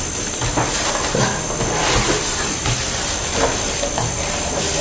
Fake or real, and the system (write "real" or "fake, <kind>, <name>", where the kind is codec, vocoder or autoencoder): real